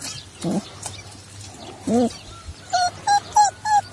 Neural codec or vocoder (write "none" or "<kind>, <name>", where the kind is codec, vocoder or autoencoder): none